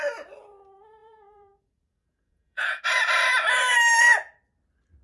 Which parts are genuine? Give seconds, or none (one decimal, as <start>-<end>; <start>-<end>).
0.0-1.0; 2.8-5.0